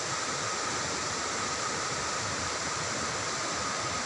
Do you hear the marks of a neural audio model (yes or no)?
yes